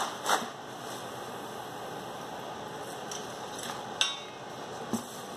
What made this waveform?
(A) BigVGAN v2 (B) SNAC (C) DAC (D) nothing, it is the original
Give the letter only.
D